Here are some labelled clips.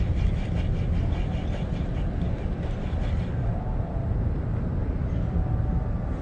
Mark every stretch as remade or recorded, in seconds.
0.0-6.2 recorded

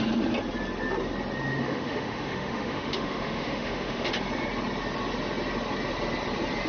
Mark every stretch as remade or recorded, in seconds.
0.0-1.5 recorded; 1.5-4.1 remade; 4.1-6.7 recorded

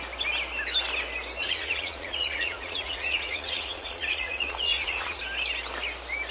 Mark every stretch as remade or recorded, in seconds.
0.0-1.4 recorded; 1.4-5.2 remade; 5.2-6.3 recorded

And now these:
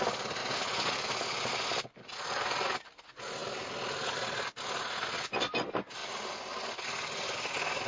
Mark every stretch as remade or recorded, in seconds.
0.0-7.9 recorded